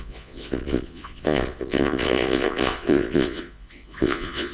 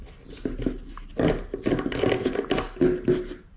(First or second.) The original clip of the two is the second